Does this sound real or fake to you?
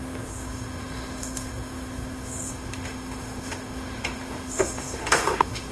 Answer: fake